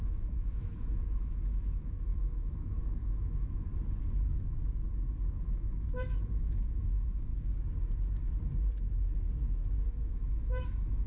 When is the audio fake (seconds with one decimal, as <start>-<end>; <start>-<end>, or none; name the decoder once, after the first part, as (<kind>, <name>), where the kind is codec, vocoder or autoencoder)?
0.0-3.7 (autoencoder, DAC-VAE); 5.4-7.3; 9.9-11.1